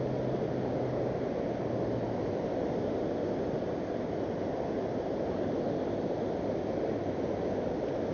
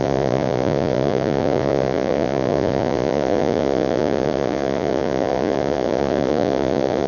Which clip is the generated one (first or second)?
second